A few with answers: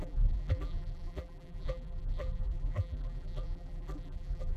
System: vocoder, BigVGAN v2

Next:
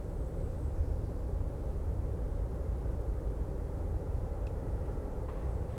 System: vocoder, BigVGAN v2